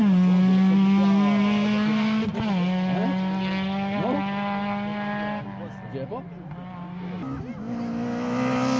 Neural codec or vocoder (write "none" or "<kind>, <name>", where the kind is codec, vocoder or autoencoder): none